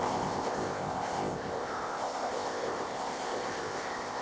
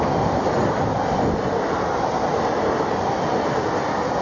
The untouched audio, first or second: second